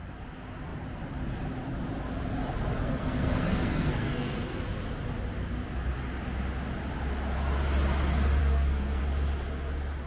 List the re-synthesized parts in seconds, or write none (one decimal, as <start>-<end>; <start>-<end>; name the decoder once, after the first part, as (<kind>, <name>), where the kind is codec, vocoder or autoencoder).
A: 2.8-4.6 (codec, SNAC); 8.4-9.0